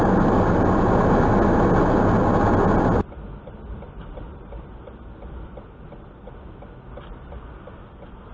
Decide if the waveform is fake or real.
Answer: real